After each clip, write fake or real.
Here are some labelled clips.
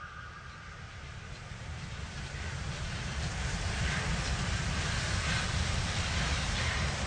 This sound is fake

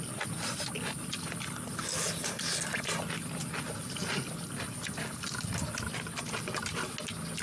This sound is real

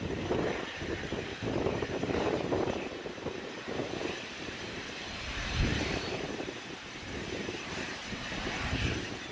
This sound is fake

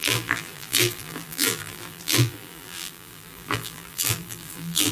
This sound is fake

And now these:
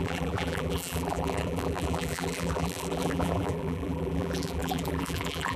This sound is fake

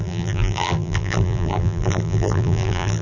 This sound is fake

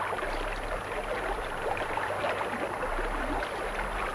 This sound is real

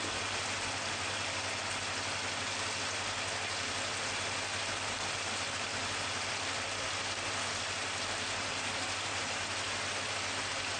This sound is real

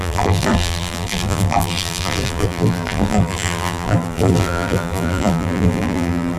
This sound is fake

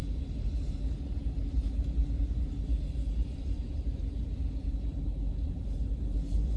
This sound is fake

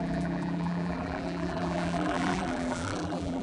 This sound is fake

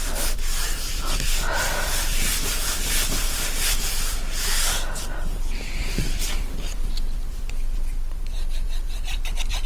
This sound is fake